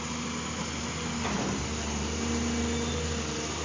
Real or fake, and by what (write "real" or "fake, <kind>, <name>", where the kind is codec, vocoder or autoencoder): real